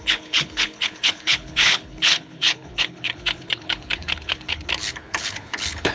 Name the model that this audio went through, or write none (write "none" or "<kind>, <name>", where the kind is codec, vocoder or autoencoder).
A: codec, HILCodec